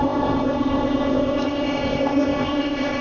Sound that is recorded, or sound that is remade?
remade